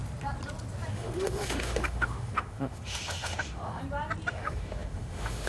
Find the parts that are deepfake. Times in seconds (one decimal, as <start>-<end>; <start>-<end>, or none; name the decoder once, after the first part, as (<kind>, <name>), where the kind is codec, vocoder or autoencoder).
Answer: 0.9-3.8 (autoencoder, DAC-VAE); 4.3-5.5